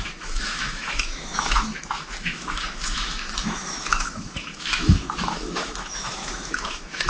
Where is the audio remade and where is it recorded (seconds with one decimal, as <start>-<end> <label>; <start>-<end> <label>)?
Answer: 0.0-7.1 remade